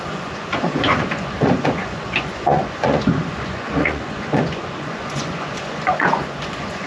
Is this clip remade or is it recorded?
remade